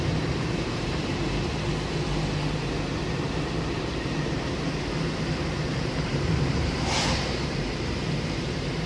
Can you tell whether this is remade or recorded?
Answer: remade